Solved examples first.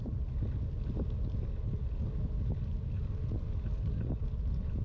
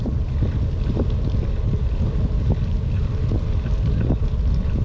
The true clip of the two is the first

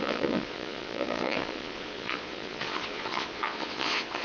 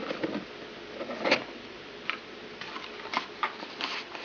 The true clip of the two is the second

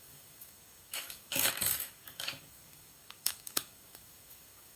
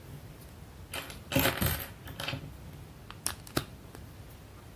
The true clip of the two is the second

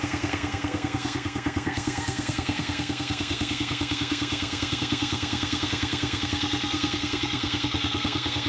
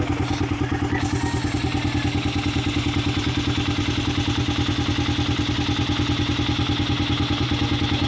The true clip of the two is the second